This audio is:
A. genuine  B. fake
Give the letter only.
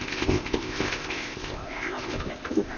B